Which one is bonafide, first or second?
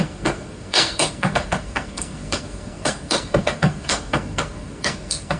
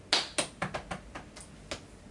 second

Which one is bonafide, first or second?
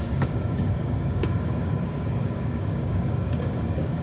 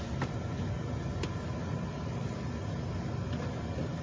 second